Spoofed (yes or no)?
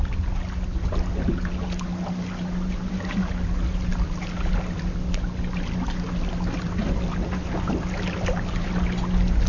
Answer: no